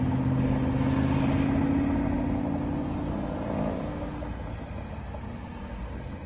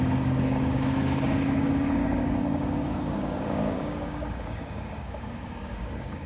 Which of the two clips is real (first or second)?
first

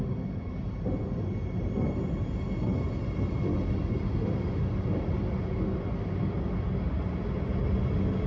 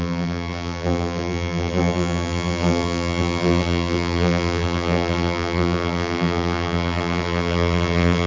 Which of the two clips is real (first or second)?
first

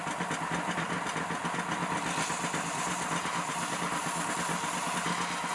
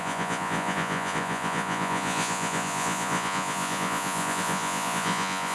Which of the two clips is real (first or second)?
first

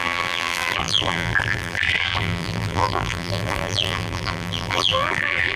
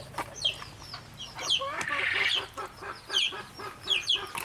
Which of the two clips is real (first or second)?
second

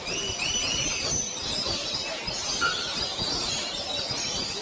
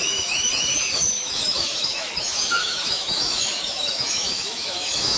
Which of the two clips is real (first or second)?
first